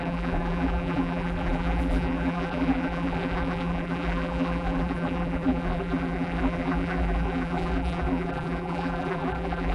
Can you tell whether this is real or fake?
fake